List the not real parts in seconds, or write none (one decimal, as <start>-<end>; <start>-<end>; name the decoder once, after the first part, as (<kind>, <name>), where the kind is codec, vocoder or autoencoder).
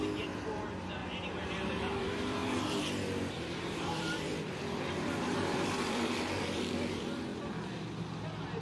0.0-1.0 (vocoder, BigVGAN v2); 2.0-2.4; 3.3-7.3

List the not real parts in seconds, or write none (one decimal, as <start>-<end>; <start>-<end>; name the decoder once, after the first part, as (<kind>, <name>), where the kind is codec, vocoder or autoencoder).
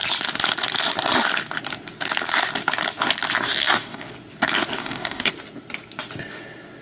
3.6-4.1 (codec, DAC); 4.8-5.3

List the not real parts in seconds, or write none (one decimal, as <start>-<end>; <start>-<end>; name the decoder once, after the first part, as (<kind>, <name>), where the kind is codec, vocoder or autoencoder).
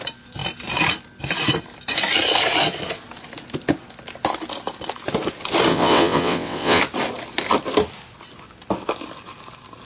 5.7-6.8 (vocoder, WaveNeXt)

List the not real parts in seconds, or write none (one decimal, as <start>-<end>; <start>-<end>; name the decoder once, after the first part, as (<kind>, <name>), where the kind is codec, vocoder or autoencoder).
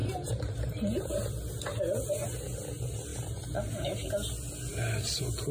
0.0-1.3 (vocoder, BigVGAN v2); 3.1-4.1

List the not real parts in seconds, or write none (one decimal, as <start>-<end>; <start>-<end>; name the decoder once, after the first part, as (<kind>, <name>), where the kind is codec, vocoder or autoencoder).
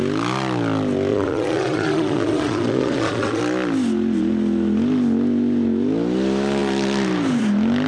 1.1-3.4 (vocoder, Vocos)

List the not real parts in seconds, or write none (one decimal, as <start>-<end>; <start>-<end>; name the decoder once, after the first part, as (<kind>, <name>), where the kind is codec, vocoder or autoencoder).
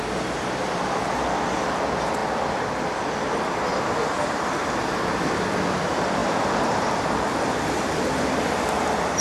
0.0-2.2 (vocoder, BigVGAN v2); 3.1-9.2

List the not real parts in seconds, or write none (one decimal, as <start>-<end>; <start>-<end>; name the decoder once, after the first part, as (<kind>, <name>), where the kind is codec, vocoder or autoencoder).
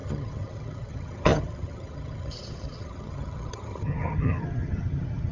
0.0-5.3 (vocoder, HiFi-GAN)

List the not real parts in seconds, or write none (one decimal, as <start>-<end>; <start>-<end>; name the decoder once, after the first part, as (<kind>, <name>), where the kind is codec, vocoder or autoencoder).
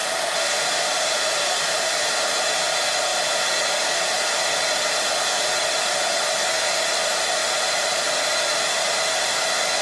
0.0-1.6 (vocoder, BigVGAN v2); 7.4-8.0